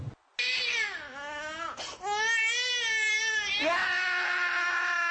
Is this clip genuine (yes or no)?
yes